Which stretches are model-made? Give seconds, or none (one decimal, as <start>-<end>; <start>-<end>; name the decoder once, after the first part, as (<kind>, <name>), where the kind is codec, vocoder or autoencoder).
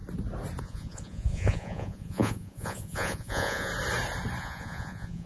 0.6-3.7 (vocoder, Vocos); 4.4-5.3